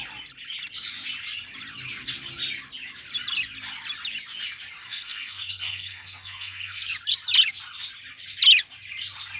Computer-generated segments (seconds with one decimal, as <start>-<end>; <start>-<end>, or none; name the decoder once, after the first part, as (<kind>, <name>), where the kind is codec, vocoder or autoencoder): 4.8-6.9 (codec, SNAC)